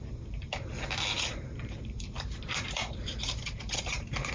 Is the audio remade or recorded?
remade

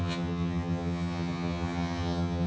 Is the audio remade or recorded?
remade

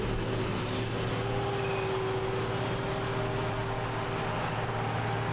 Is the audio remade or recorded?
recorded